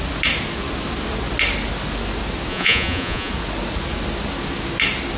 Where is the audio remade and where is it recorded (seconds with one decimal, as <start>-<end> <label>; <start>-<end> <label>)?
0.0-2.5 recorded; 2.5-3.3 remade; 3.3-5.2 recorded